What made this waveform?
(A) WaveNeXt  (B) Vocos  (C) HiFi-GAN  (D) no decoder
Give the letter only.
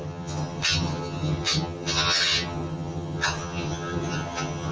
C